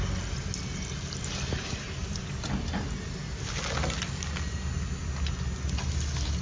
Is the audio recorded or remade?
recorded